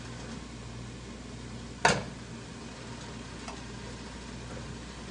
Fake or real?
real